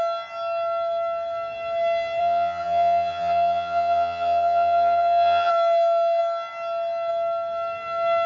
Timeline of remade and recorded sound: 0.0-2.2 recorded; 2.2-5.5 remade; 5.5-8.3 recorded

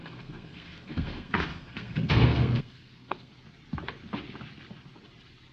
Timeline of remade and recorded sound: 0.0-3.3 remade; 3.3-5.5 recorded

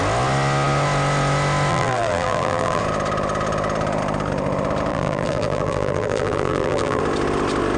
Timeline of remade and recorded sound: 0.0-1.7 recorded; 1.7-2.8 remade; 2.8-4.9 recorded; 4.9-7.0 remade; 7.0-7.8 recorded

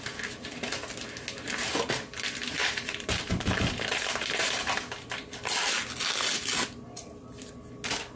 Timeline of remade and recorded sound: 0.0-2.6 recorded; 2.6-4.8 remade; 4.8-8.2 recorded

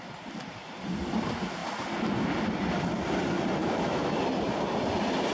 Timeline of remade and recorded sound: 0.0-3.6 recorded; 3.6-4.2 remade; 4.2-5.3 recorded

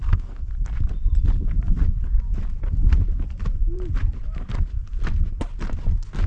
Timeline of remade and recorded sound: 0.0-0.5 remade; 0.5-6.3 recorded

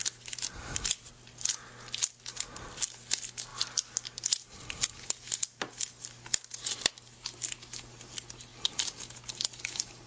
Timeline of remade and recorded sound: 0.0-10.1 recorded